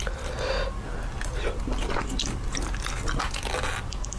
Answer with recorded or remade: recorded